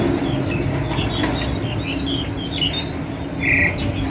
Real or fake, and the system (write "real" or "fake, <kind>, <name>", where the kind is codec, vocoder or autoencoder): real